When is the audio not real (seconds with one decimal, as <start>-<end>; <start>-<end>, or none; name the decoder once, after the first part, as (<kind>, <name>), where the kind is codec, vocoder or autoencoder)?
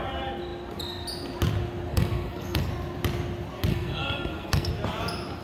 1.9-2.7 (codec, SNAC); 3.7-4.7